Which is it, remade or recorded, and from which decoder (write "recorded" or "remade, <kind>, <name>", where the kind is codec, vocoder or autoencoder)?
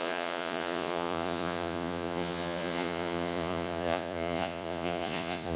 remade, vocoder, Vocos